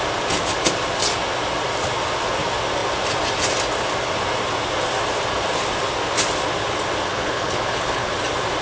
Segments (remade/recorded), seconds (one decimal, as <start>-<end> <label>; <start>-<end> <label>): 0.0-7.1 recorded; 7.1-8.1 remade; 8.1-8.6 recorded